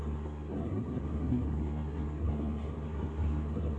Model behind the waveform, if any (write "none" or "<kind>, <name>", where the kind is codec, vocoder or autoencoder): codec, SNAC